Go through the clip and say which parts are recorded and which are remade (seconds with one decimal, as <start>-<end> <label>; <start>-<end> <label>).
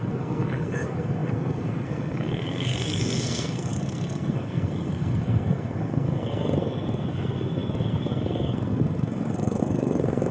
0.0-10.3 remade